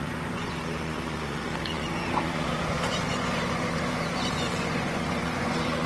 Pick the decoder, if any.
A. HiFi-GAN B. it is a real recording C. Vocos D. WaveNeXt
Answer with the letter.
C